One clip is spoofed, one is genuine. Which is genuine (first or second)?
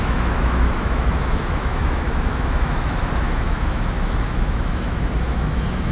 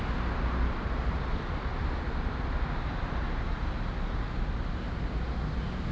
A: second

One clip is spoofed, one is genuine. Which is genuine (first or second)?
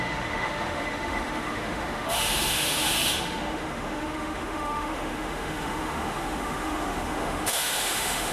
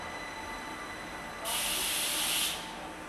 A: second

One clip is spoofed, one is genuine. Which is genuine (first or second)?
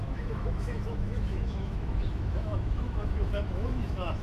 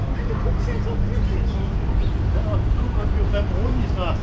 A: second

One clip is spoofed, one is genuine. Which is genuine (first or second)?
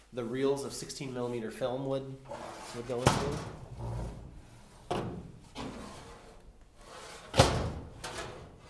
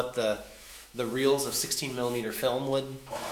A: first